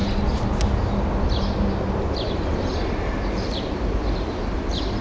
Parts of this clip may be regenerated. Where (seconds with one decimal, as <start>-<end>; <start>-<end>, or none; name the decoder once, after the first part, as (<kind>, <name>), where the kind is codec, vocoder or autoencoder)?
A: 3.0-5.0 (vocoder, BigVGAN v2)